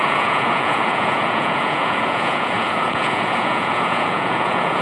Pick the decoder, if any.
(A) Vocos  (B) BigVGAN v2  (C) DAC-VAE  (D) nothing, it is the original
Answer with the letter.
A